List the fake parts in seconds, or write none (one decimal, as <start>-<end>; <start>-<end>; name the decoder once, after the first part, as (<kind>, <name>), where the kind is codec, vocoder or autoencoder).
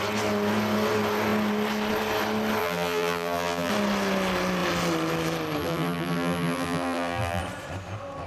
2.6-3.7 (vocoder, BigVGAN v2); 5.6-7.4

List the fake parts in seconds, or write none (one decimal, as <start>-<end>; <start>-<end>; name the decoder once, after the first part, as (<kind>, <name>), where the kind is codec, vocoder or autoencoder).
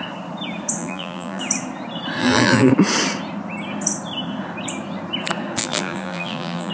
0.8-1.4 (vocoder, BigVGAN v2); 2.2-2.7; 5.6-6.7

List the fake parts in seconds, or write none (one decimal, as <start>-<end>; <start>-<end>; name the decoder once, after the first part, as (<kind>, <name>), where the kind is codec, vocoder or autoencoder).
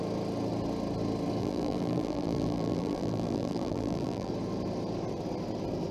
1.4-4.3 (vocoder, BigVGAN v2)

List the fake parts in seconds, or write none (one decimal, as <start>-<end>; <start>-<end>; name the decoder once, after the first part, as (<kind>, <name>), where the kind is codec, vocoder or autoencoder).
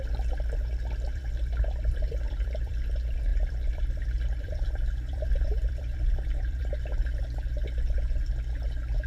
1.1-2.9 (vocoder, BigVGAN v2); 3.3-7.2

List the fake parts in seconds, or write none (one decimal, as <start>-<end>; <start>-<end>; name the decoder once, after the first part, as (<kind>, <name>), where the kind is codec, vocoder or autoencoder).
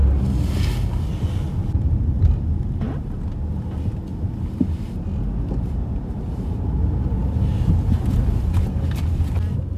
none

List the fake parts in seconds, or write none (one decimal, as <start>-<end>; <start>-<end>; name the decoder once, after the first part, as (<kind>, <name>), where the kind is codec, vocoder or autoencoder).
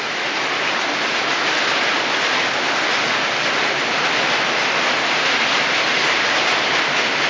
5.9-6.8 (vocoder, BigVGAN v2)